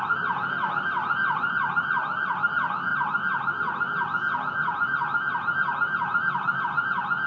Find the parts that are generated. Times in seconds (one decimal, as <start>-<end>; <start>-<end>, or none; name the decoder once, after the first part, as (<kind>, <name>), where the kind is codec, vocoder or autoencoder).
none